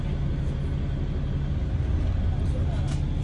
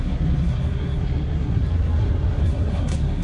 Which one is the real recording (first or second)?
first